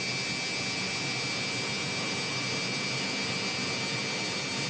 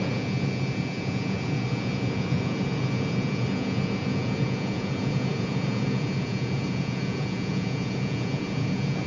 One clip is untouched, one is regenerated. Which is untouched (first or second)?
first